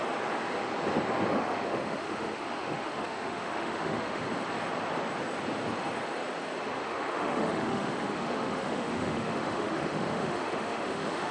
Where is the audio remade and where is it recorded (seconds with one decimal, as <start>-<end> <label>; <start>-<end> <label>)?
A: 0.0-1.3 recorded; 1.3-4.2 remade; 4.2-6.8 recorded; 6.8-11.3 remade